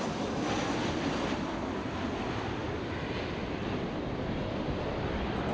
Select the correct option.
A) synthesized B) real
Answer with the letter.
B